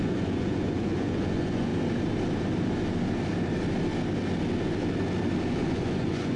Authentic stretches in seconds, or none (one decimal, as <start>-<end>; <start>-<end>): 1.7-5.5